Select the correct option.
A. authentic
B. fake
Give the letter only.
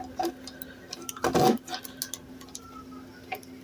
A